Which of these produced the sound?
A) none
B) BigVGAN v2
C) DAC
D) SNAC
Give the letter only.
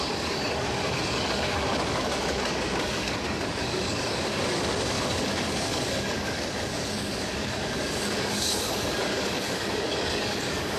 C